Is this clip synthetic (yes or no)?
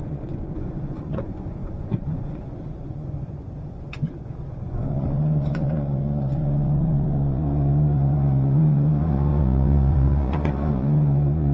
yes